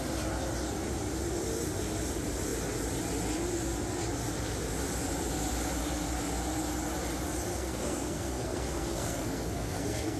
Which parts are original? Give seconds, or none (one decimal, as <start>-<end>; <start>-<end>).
0.0-7.5